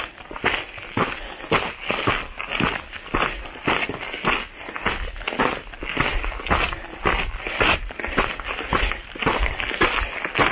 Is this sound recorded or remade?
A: recorded